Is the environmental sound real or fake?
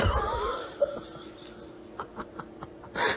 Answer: real